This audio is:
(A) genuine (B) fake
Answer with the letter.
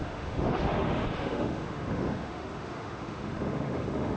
B